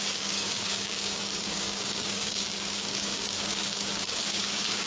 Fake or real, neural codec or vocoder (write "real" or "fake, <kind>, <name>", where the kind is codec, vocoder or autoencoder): fake, codec, DAC